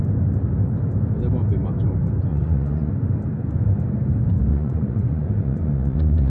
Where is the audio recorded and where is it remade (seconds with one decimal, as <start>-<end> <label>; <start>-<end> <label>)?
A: 0.0-2.3 recorded; 2.3-2.9 remade; 2.9-4.5 recorded; 4.5-6.3 remade